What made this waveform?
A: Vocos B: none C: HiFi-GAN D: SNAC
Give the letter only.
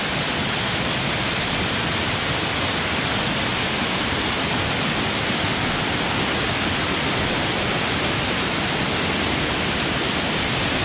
B